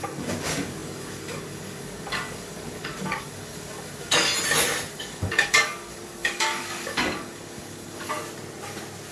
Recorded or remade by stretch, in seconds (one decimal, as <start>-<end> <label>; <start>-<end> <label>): 0.0-4.3 remade; 4.3-4.9 recorded; 4.9-8.2 remade; 8.2-9.1 recorded